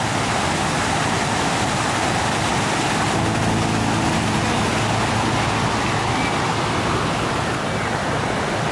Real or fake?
real